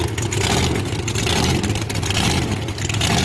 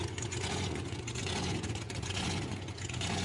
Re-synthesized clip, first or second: second